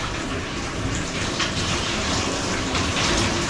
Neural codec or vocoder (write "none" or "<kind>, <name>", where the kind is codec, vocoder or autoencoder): vocoder, BigVGAN v2